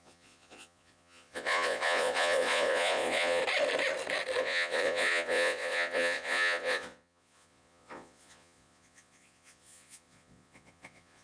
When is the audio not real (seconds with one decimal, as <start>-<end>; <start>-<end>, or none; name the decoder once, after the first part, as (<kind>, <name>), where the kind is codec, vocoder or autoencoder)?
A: 0.0-3.4 (vocoder, Vocos); 4.4-11.2